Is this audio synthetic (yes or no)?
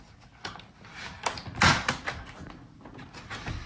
no